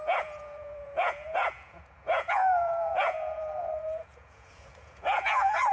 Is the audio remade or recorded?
remade